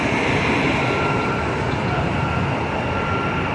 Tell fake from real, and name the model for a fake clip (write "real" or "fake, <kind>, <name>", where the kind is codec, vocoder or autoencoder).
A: real